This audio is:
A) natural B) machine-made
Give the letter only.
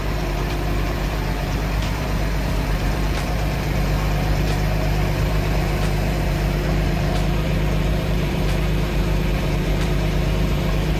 B